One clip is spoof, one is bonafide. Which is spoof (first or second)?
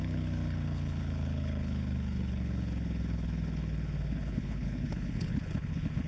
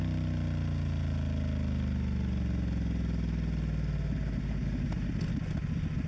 first